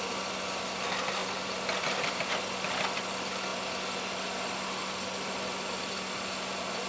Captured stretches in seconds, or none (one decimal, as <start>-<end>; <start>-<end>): 0.0-6.9